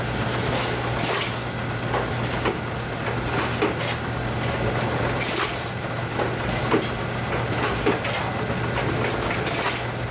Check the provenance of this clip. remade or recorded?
recorded